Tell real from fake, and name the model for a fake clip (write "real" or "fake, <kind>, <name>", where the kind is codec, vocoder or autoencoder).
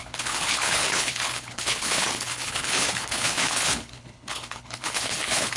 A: fake, codec, HILCodec